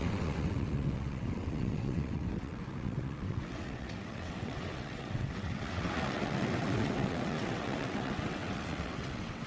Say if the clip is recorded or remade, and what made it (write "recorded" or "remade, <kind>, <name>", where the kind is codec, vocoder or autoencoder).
remade, vocoder, WaveNeXt